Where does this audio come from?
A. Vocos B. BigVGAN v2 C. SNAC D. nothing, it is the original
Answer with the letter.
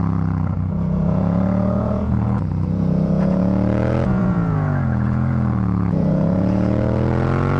A